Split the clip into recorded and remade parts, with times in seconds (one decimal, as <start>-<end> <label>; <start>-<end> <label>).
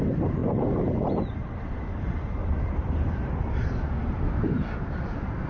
0.0-2.4 recorded; 2.4-4.8 remade; 4.8-5.5 recorded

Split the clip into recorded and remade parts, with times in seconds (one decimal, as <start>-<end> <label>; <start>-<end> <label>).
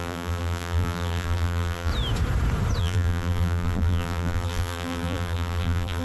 0.0-1.9 remade; 1.9-2.8 recorded; 2.8-6.0 remade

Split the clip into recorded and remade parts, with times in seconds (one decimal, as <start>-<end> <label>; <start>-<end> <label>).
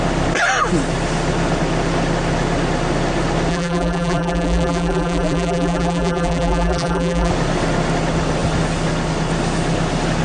0.0-3.5 recorded; 3.5-7.3 remade; 7.3-10.2 recorded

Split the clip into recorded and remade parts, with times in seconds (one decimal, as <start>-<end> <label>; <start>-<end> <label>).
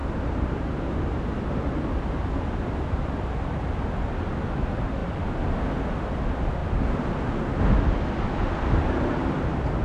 0.0-0.6 remade; 0.6-9.8 recorded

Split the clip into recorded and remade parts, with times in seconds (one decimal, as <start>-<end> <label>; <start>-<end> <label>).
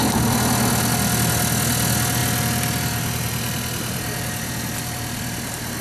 0.0-5.8 recorded